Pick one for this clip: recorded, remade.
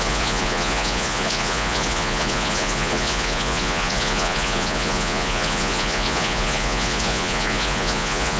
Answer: remade